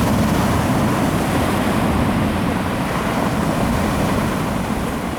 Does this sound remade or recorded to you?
recorded